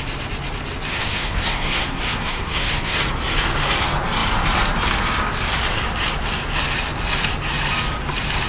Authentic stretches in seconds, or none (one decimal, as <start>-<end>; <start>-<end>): 0.0-0.9; 3.0-8.5